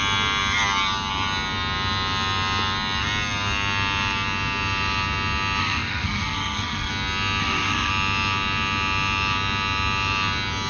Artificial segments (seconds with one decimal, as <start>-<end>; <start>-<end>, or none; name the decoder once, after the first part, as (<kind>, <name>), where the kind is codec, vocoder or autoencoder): 5.6-6.9 (codec, SNAC); 7.4-7.9